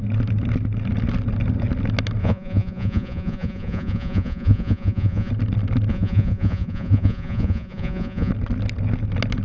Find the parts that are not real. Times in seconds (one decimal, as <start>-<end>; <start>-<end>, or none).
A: 2.2-5.3; 5.9-8.3